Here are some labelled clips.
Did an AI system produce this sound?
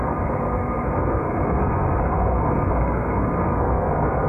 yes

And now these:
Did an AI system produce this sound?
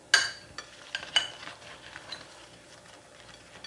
no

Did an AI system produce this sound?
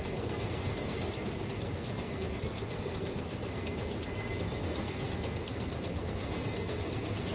yes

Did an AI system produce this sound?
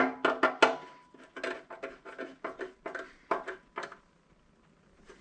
no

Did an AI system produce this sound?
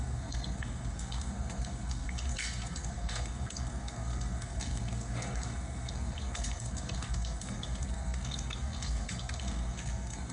yes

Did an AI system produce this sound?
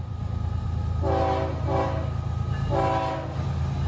no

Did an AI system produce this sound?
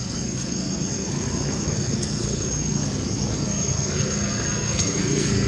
yes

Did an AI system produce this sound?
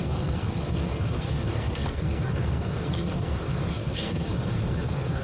yes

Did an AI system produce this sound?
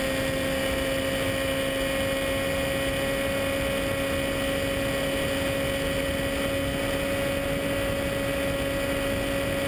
no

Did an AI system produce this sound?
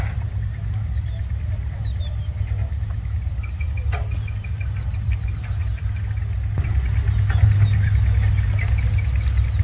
no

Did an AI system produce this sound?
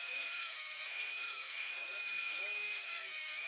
yes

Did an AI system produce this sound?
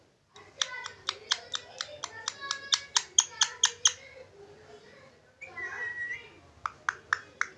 no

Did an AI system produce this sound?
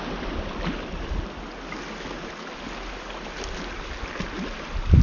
no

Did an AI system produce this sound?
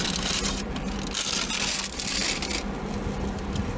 no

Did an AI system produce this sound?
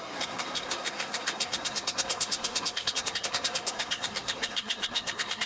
yes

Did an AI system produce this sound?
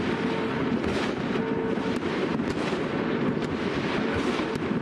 no